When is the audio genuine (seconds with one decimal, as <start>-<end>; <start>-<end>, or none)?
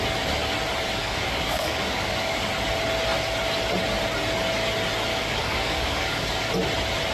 0.0-1.0; 2.5-5.1; 6.5-7.1